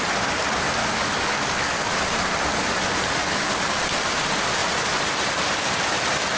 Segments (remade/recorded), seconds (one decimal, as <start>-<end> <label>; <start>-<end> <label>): 0.0-0.8 recorded; 0.8-1.9 remade; 1.9-3.2 recorded; 3.2-3.8 remade; 3.8-6.4 recorded